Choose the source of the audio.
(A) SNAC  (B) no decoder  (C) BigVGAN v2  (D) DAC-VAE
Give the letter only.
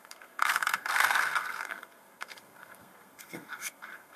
A